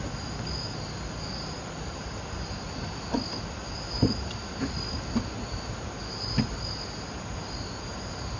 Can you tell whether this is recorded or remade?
recorded